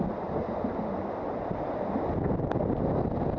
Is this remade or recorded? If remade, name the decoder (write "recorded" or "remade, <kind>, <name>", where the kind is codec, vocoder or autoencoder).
recorded